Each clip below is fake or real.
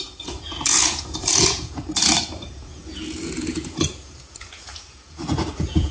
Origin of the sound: fake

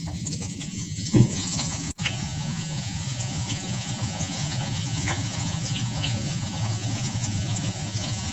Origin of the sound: fake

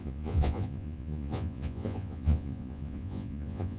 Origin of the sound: fake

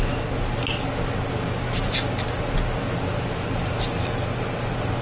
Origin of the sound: real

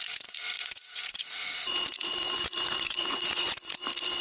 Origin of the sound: fake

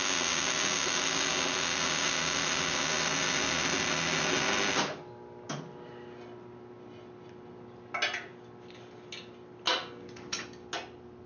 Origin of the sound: real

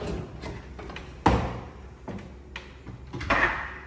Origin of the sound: real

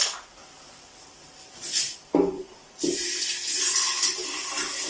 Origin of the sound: real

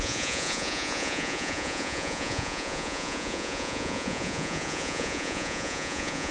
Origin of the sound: fake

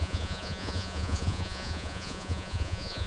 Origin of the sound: fake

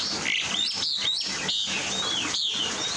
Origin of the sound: real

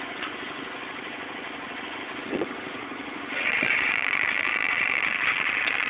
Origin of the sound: fake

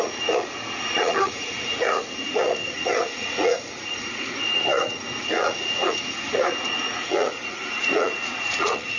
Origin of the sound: fake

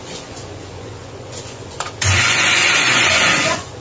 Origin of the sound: fake